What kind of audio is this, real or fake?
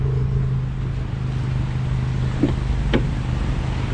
real